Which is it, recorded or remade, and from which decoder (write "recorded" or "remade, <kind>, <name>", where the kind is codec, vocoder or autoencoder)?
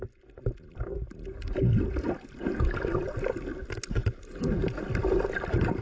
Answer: recorded